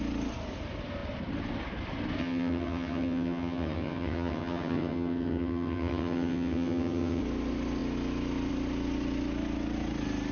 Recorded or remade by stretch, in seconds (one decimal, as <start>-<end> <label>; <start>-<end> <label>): 0.0-2.2 recorded; 2.2-7.2 remade; 7.2-10.3 recorded